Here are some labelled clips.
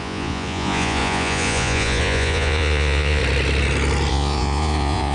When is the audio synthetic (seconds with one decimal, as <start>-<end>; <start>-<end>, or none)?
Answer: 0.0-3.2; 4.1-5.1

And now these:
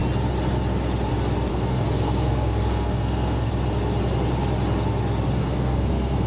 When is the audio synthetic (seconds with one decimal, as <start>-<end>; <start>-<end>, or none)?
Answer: 1.5-3.5; 5.4-6.3

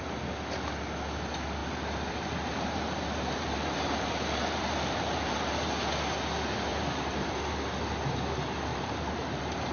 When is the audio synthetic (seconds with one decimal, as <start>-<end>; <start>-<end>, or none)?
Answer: 1.6-5.7; 6.7-7.5; 8.7-9.7

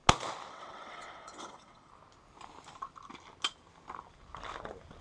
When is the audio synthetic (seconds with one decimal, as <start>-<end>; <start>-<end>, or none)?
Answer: 0.5-1.9

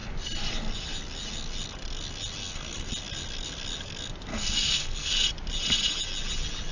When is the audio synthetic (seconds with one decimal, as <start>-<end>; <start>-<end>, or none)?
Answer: 2.4-2.9; 4.3-5.1

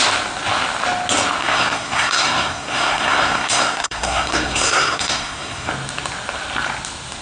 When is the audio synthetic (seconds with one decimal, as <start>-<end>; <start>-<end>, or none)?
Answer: 1.4-5.7